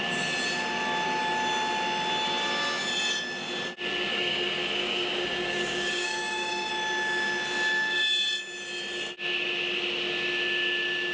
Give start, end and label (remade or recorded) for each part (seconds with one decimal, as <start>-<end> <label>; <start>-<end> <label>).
0.0-4.1 recorded; 4.1-6.7 remade; 6.7-11.1 recorded